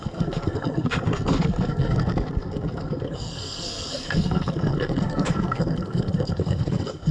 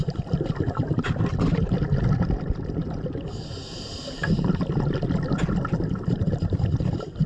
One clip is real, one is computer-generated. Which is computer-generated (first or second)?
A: first